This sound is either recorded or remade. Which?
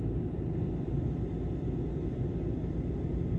remade